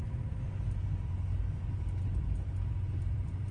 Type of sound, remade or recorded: recorded